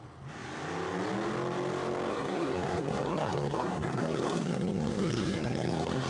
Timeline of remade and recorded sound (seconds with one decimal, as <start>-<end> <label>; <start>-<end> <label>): 0.0-2.1 recorded; 2.1-6.1 remade